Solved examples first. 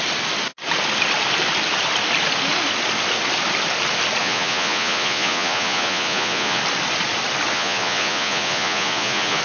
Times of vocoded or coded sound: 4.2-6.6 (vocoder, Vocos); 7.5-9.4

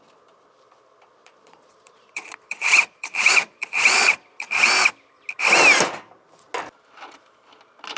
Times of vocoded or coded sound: 1.2-4.7 (vocoder, Vocos)

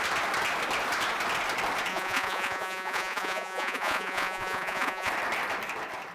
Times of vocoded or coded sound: 1.9-5.1 (vocoder, Vocos)

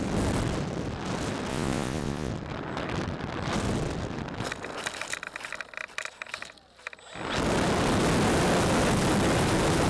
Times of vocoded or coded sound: 1.5-2.3 (vocoder, Vocos)

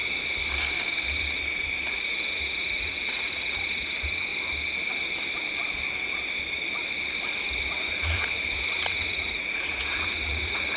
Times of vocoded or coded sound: 1.9-4.3 (vocoder, Vocos); 7.4-10.8

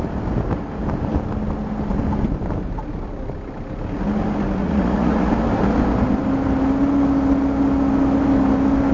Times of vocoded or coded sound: 4.6-5.3 (vocoder, Vocos)